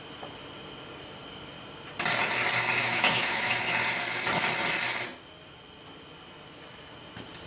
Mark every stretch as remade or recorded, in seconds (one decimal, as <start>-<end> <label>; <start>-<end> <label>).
0.0-2.8 recorded; 2.8-3.6 remade; 3.6-7.5 recorded